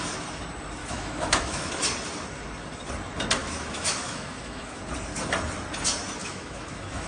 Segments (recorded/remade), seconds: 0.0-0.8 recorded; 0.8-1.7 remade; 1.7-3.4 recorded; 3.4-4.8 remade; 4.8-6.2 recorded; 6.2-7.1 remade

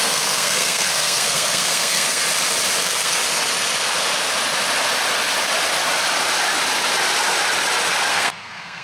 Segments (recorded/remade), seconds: 0.0-2.2 remade; 2.2-2.8 recorded; 2.8-3.2 remade; 3.2-8.1 recorded; 8.1-8.8 remade

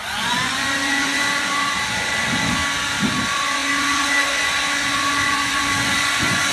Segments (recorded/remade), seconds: 0.0-2.6 remade; 2.6-3.2 recorded; 3.2-6.5 remade

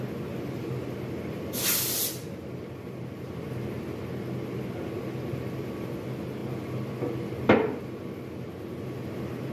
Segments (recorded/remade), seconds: 0.0-9.5 recorded

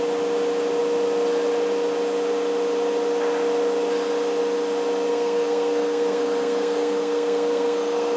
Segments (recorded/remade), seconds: 0.0-5.1 recorded; 5.1-8.2 remade